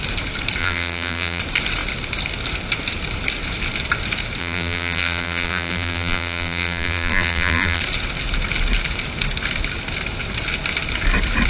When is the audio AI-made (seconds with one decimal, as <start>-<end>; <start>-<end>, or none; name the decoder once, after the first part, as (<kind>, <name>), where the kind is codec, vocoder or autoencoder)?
0.6-1.4 (vocoder, BigVGAN v2); 4.4-7.8